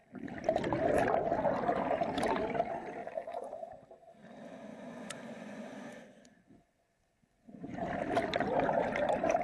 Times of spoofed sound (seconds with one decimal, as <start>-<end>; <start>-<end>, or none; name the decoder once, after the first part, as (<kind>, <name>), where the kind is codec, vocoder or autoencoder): 3.0-3.7 (vocoder, Vocos); 4.7-7.8